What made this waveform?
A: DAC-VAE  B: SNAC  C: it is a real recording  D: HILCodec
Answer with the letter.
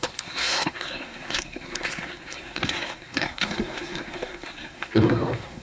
B